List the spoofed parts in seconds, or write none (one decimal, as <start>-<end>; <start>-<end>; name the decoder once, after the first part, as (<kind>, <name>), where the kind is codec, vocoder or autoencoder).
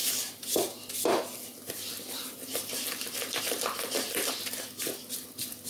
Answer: none